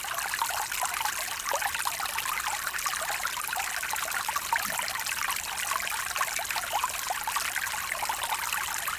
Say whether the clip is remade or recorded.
remade